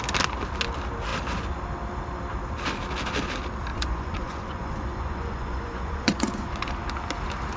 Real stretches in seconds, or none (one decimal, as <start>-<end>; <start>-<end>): 0.0-3.7; 6.7-7.6